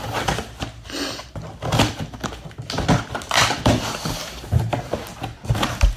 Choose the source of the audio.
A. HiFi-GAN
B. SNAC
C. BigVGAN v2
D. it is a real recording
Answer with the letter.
D